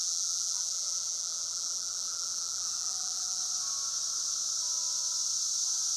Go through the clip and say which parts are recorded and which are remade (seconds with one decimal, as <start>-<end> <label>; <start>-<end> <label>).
0.0-3.4 remade; 3.4-6.0 recorded